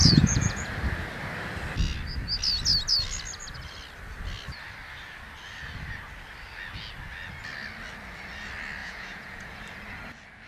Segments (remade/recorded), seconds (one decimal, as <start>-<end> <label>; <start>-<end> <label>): 0.0-0.7 remade; 0.7-8.8 recorded; 8.8-9.5 remade; 9.5-10.5 recorded